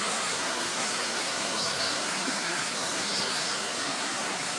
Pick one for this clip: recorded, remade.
remade